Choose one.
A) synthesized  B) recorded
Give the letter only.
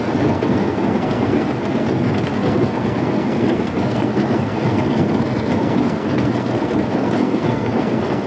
A